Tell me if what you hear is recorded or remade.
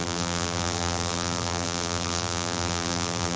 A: remade